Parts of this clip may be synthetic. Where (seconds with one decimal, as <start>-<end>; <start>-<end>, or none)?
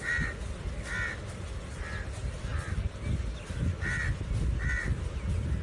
none